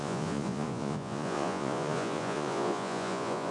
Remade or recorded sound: remade